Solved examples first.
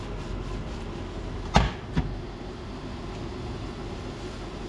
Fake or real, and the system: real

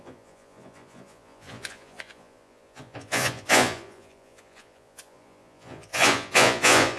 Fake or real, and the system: fake, vocoder, Vocos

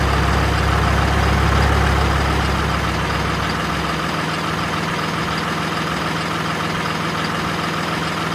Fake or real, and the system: real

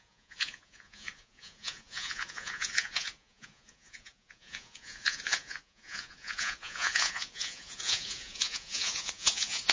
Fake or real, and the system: fake, vocoder, Vocos